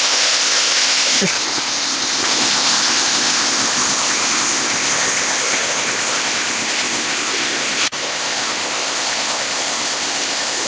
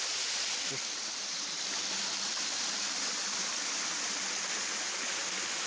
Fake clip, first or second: first